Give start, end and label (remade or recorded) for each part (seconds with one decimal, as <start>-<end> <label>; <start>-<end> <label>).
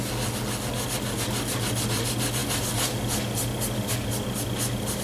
0.0-5.0 recorded